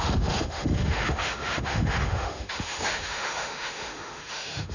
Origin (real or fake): fake